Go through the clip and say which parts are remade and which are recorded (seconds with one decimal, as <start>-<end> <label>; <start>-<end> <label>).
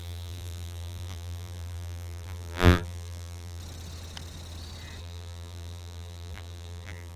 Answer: 0.0-3.6 remade; 3.6-5.0 recorded; 5.0-7.2 remade